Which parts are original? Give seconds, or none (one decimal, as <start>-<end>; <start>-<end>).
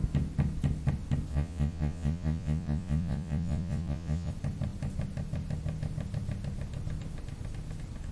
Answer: 0.0-1.3; 4.3-8.1